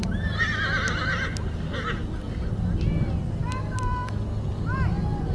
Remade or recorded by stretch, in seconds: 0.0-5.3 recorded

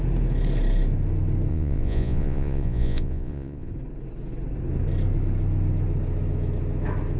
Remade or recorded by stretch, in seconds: 0.0-1.5 recorded; 1.5-3.7 remade; 3.7-7.2 recorded

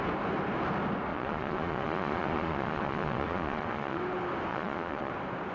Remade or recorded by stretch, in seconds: 0.0-1.1 recorded; 1.1-4.0 remade; 4.0-4.5 recorded; 4.5-5.1 remade; 5.1-5.5 recorded

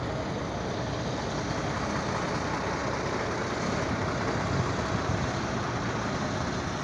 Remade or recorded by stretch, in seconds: 0.0-6.8 recorded

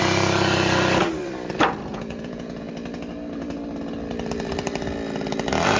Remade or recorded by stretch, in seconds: 0.0-1.9 recorded; 1.9-2.7 remade; 2.7-5.8 recorded

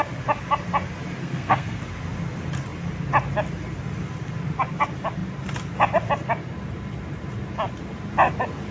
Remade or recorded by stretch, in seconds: 0.0-1.2 recorded; 1.2-1.8 remade; 1.8-8.7 recorded

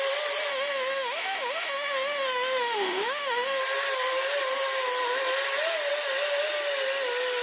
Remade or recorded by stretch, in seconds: 0.0-0.5 recorded; 0.5-3.6 remade; 3.6-7.4 recorded